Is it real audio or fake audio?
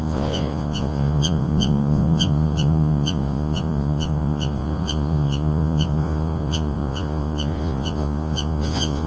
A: fake